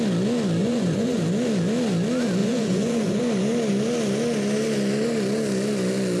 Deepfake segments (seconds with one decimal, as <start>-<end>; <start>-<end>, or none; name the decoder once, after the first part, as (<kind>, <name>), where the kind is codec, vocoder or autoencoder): 0.6-1.2 (vocoder, Vocos); 2.4-3.2